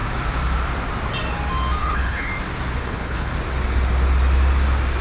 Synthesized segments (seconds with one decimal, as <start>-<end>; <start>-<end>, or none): 1.8-2.3; 2.8-3.3